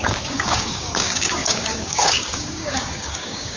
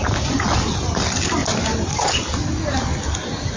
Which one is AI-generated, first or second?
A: first